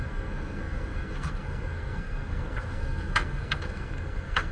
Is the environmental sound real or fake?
fake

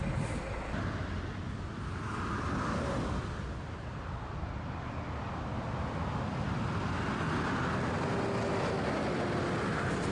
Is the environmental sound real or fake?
real